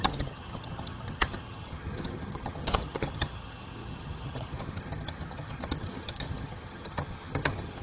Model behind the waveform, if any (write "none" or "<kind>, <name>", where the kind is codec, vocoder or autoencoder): vocoder, HiFi-GAN